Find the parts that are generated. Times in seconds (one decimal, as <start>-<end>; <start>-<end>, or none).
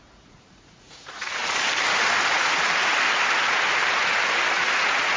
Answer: 0.0-1.4; 4.5-5.2